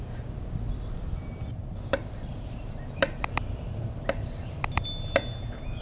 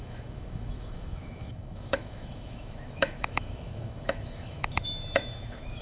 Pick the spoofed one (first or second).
second